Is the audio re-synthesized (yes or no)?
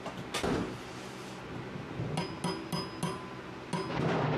no